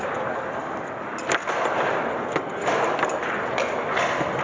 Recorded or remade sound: recorded